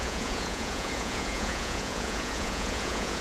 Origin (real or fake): fake